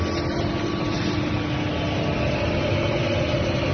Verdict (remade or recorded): recorded